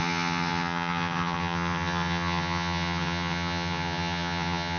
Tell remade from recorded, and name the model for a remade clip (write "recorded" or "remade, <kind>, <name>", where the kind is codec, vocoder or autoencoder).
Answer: remade, vocoder, HiFi-GAN